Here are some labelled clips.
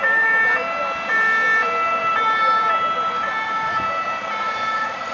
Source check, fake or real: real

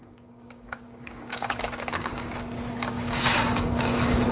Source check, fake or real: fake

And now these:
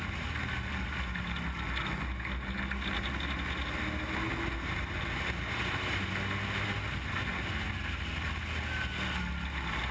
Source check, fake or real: real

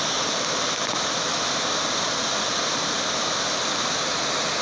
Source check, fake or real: real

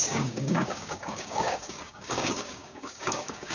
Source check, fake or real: fake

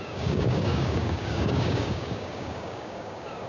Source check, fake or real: fake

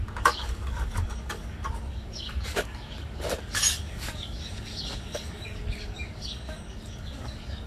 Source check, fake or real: fake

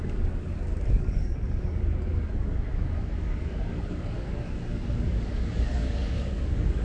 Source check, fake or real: fake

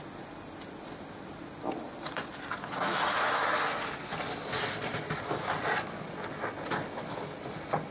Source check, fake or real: real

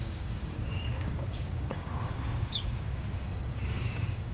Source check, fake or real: fake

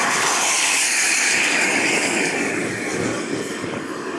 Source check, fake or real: fake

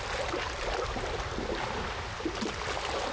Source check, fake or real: real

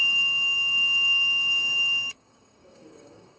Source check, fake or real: fake